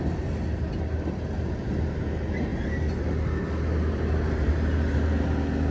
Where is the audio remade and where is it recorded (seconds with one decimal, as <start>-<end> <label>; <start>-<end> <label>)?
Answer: 0.0-5.7 recorded